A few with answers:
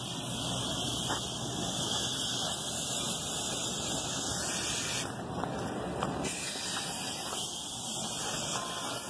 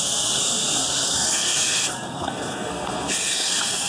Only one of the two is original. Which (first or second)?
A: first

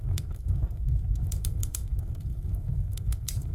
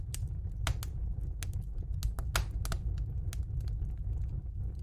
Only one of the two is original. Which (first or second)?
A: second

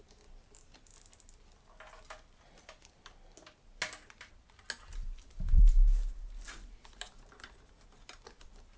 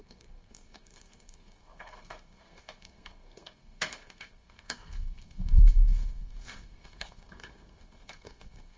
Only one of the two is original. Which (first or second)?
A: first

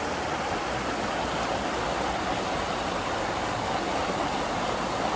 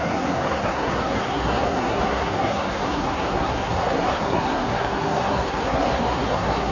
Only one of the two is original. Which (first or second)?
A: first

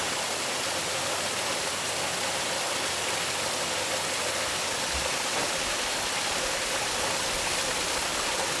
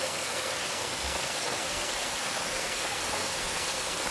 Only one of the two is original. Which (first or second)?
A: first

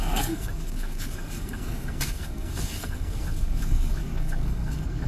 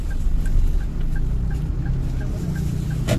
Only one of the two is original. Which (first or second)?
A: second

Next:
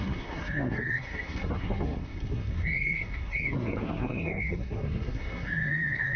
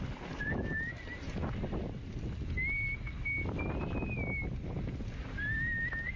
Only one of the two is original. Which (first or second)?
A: second